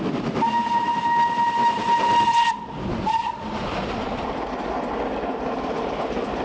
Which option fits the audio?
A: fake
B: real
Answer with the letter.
B